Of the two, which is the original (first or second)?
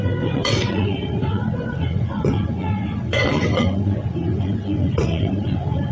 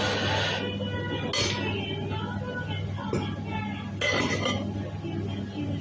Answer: second